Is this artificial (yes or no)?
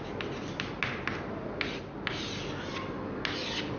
no